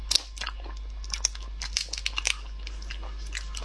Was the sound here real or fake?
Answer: real